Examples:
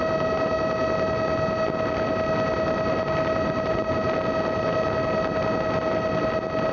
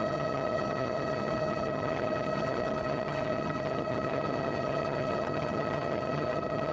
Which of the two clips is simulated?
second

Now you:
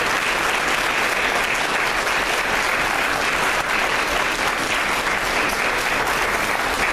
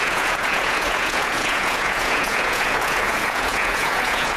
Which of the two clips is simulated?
second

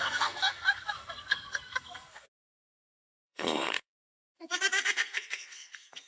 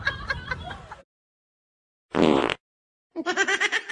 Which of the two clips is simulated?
first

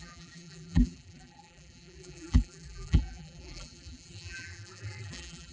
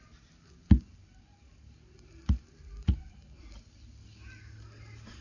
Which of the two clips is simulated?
first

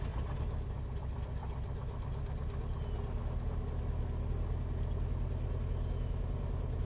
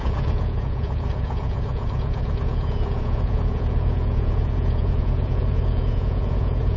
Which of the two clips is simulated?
second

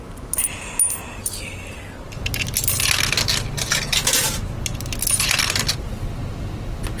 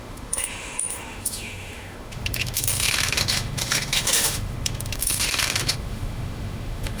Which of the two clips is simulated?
second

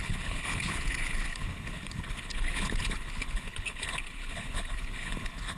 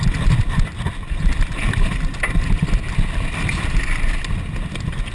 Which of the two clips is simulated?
first